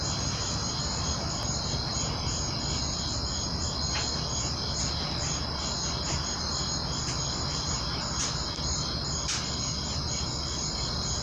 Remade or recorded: recorded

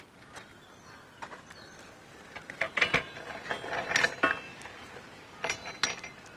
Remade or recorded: recorded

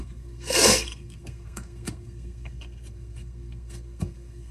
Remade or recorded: remade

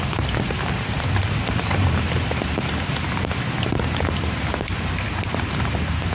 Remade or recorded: remade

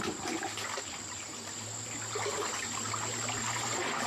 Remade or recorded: recorded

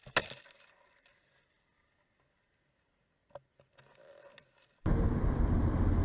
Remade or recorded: recorded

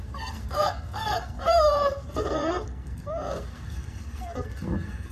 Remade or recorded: remade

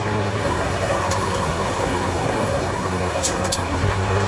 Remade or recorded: remade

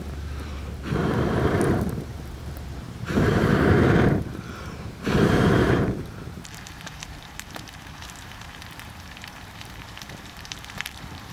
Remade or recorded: remade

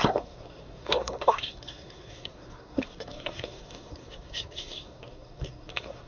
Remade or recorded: remade